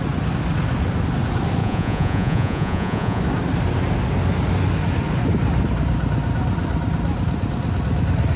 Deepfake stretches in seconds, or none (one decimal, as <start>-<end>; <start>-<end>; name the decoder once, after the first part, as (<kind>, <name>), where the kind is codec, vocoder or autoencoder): 1.6-3.2 (vocoder, Vocos)